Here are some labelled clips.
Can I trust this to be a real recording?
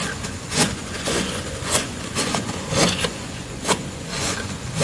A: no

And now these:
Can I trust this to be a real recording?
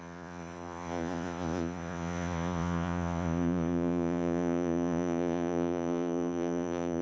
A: no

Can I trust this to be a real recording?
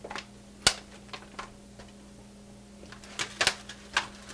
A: yes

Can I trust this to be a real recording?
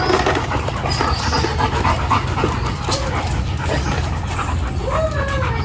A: yes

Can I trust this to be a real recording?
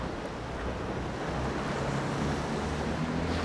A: yes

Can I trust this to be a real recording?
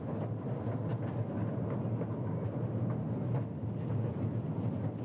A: yes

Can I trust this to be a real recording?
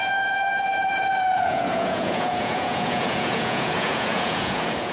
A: no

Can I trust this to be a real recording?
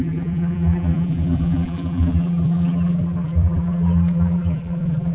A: no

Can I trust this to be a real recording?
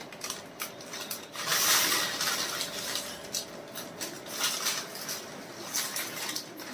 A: yes